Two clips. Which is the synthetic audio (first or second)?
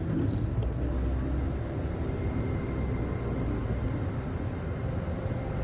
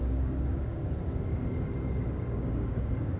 second